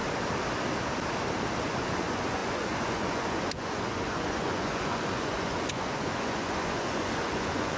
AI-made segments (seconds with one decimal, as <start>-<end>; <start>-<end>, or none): 1.6-7.8